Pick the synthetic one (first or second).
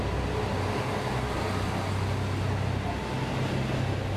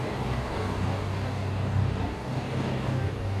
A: second